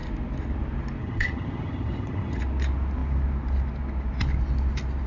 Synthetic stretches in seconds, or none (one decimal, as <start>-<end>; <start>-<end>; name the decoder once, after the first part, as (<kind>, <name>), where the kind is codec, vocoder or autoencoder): 1.0-2.4 (vocoder, HiFi-GAN)